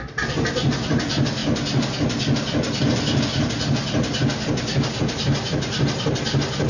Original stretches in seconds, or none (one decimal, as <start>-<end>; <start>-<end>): 0.0-6.7